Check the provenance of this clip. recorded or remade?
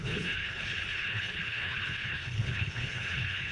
remade